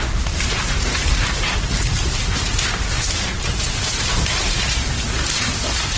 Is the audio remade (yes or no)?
yes